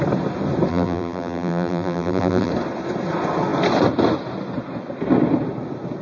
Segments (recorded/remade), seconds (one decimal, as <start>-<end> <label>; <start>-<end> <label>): 0.0-0.7 recorded; 0.7-2.5 remade; 2.5-6.0 recorded